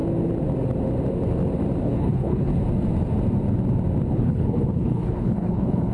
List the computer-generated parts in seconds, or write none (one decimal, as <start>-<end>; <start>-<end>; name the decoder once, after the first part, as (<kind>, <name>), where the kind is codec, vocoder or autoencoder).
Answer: 1.8-2.5 (codec, HILCodec); 4.1-5.9